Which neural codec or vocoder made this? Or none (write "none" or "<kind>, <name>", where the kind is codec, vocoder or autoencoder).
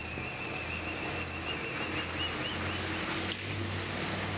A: none